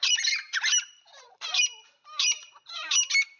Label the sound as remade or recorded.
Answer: remade